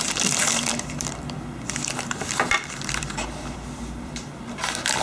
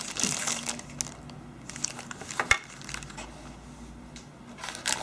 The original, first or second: second